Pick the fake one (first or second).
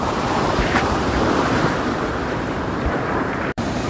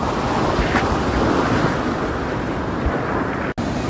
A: first